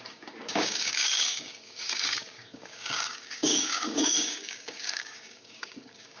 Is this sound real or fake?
fake